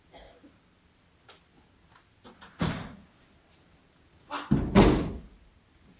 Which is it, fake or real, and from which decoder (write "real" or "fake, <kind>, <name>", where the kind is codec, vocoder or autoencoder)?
real